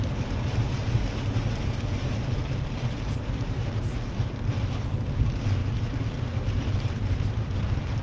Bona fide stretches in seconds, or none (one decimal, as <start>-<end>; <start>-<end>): none